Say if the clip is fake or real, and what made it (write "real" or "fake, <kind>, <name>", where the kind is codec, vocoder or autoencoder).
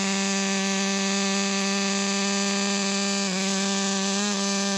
real